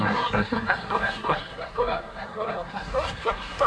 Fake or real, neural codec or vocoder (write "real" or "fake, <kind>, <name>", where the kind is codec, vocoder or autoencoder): fake, codec, SNAC